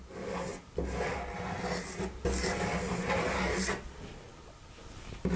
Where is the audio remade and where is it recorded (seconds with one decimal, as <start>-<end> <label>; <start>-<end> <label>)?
0.0-5.4 recorded